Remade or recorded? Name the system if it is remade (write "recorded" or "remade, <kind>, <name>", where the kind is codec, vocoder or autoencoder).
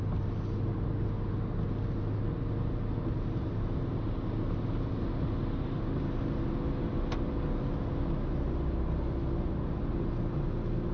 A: recorded